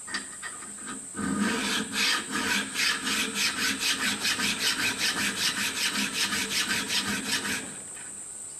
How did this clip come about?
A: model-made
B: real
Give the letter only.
B